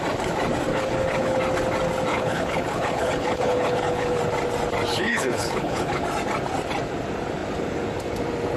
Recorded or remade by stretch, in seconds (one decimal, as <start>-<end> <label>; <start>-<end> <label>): 0.0-0.7 recorded; 0.7-1.4 remade; 1.4-2.1 recorded; 2.1-4.2 remade; 4.2-4.9 recorded; 4.9-6.0 remade; 6.0-8.6 recorded